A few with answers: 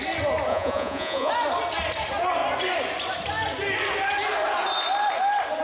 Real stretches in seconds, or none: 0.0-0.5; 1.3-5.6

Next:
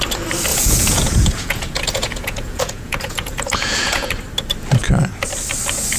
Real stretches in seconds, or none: 0.0-0.5; 4.1-6.0

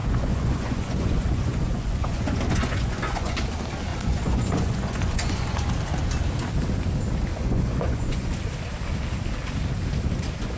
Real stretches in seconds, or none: 3.4-3.9; 5.7-7.3; 8.3-10.6

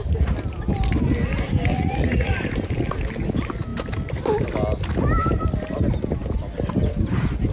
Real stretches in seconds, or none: 0.0-1.7; 2.3-7.5

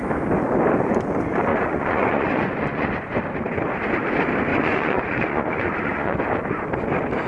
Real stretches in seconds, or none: 0.0-1.5; 3.1-4.5; 6.2-7.3